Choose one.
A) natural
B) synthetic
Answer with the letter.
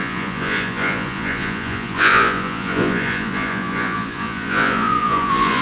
B